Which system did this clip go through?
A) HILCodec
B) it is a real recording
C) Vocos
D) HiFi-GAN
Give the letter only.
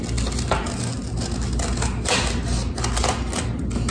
B